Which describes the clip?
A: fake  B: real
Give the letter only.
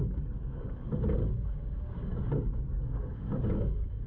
A